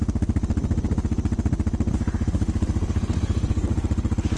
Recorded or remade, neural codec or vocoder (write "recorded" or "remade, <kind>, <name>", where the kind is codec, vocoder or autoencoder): recorded